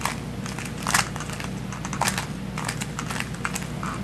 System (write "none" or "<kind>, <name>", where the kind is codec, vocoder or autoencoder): none